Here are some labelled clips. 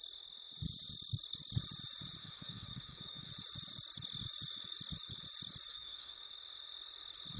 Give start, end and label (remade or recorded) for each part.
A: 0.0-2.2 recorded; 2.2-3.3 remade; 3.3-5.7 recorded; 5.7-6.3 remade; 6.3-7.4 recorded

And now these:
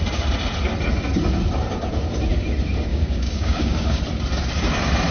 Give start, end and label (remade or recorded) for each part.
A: 0.0-2.9 recorded; 2.9-4.0 remade; 4.0-5.1 recorded

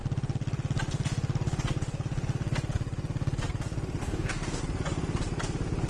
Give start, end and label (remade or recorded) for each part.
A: 0.0-4.0 recorded; 4.0-4.6 remade; 4.6-5.9 recorded

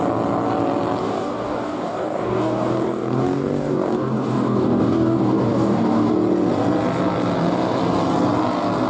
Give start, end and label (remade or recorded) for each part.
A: 0.0-1.0 recorded; 1.0-6.1 remade; 6.1-8.9 recorded

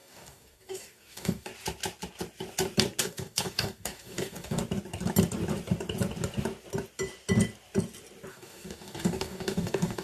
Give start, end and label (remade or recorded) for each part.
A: 0.0-1.5 remade; 1.5-3.0 recorded; 3.0-4.6 remade; 4.6-8.3 recorded; 8.3-10.0 remade

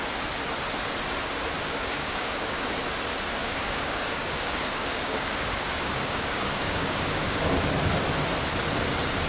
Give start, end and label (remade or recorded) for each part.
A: 0.0-1.6 recorded; 1.6-2.8 remade; 2.8-3.4 recorded; 3.4-7.6 remade; 7.6-9.3 recorded